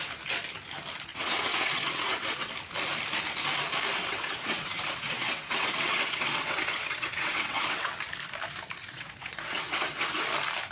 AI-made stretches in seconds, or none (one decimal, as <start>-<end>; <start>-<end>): 1.1-2.5; 4.0-7.9; 8.8-10.2